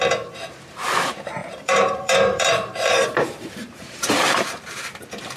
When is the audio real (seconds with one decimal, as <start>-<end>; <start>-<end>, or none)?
0.0-1.4; 4.6-5.4